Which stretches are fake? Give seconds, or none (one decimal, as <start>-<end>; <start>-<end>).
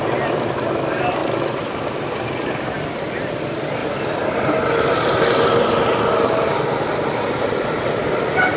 none